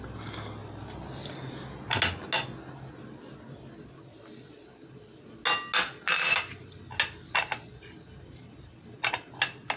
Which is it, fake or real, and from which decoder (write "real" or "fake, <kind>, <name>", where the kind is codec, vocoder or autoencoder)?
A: real